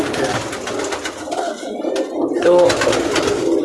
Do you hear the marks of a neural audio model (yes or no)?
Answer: no